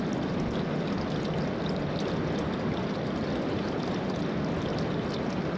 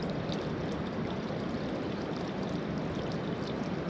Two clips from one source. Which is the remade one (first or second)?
second